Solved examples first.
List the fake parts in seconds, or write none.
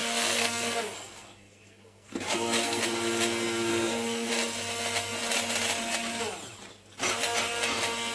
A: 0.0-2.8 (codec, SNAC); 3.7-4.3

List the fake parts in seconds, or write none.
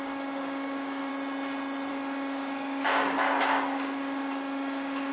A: 0.0-1.1 (codec, DAC); 1.9-5.1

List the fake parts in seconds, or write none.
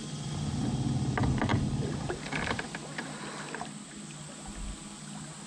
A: none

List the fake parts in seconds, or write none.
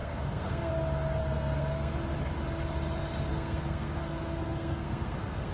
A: 0.0-0.7 (codec, SNAC); 1.2-1.9; 3.3-5.5